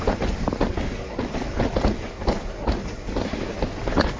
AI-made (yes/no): no